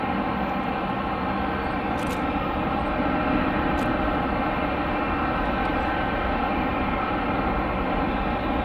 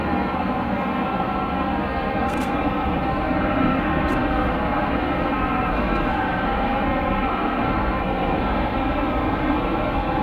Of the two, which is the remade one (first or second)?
second